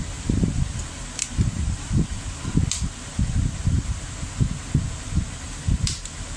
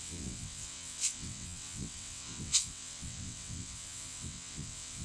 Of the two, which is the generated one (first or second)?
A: second